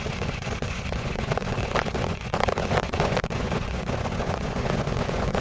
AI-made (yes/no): yes